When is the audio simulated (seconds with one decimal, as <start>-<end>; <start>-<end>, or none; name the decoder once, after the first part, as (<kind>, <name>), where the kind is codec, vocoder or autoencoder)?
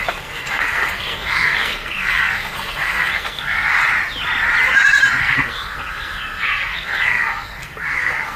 0.0-3.8 (codec, SNAC); 5.2-8.4